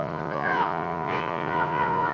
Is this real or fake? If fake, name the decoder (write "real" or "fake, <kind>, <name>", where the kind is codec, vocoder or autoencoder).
fake, vocoder, Vocos